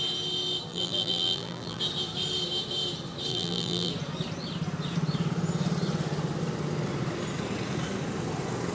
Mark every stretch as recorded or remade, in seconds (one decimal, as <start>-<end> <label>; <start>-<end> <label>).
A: 0.0-0.7 recorded; 0.7-1.8 remade; 1.8-3.3 recorded; 3.3-3.9 remade; 3.9-8.7 recorded